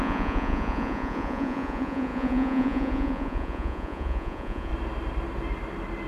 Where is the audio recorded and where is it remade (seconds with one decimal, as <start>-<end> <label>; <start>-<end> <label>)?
0.0-4.7 remade; 4.7-6.1 recorded